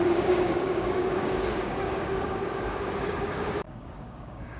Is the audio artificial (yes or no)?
yes